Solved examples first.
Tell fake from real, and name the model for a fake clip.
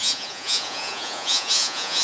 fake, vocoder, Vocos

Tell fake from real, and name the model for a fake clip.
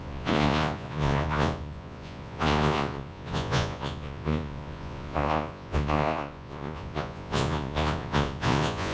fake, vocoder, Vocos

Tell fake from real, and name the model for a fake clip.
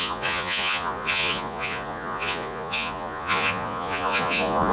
fake, vocoder, Vocos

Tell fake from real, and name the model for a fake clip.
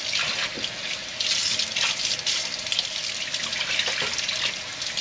real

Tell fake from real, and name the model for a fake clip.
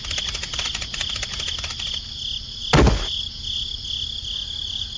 real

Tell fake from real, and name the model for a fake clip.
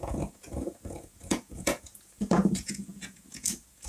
fake, vocoder, Vocos